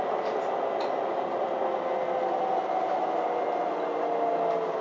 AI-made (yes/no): no